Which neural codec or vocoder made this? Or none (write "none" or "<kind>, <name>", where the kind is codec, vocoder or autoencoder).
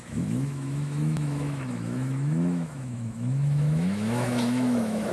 autoencoder, DAC-VAE